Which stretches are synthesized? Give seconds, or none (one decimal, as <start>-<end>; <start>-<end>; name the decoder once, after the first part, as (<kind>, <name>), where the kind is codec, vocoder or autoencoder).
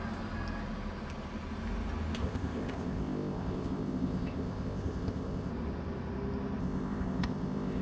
2.2-5.5 (codec, ZipCodec); 6.6-7.8